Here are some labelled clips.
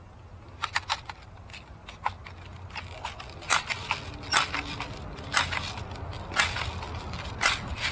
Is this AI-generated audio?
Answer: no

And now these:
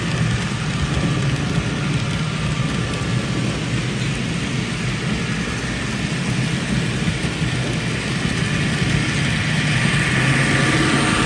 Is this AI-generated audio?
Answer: no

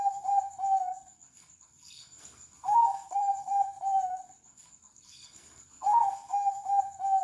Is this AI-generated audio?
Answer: yes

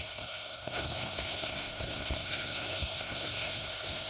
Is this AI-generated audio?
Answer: yes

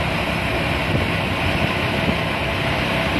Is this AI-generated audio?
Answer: no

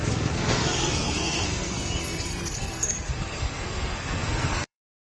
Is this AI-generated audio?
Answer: yes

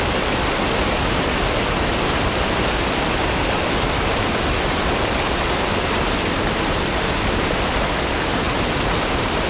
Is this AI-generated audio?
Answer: no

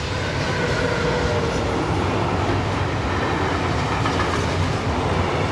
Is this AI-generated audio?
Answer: no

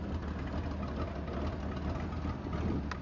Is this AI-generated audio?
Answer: no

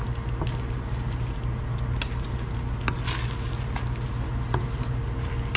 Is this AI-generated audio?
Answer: no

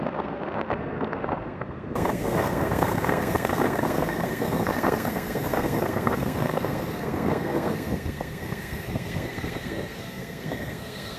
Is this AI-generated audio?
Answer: yes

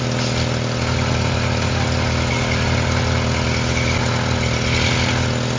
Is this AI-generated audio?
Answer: no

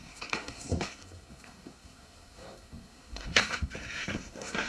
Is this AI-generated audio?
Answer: yes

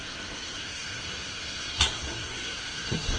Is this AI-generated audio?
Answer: yes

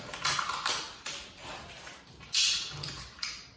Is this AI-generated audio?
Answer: no